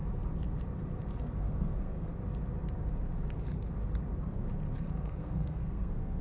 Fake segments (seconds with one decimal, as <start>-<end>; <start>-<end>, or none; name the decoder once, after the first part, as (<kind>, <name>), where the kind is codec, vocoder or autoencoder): 1.2-2.1 (codec, SNAC); 4.8-6.2